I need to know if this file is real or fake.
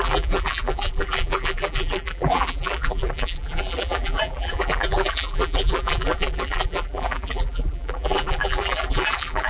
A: fake